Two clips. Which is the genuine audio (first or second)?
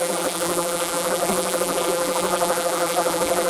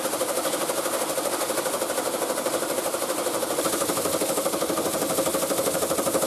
second